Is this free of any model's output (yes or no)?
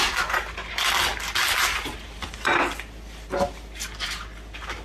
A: yes